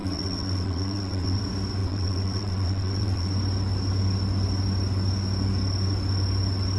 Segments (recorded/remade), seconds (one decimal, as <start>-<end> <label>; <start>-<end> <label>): 0.0-1.4 remade; 1.4-1.8 recorded; 1.8-3.3 remade; 3.3-6.8 recorded